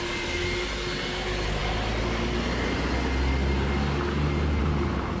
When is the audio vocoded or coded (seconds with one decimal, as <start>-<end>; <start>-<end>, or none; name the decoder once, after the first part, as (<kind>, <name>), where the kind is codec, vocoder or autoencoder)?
none